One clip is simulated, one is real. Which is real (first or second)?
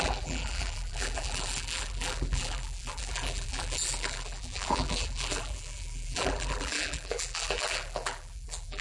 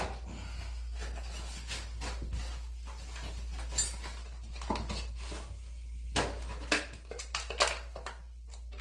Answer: second